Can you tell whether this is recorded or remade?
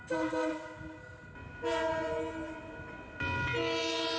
recorded